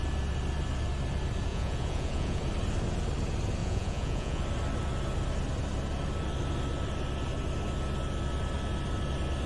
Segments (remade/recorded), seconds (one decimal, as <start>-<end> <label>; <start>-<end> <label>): 0.0-1.5 recorded; 1.5-2.4 remade; 2.4-3.6 recorded; 3.6-4.4 remade; 4.4-9.5 recorded